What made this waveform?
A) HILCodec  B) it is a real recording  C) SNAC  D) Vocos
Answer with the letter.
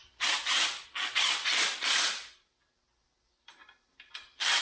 B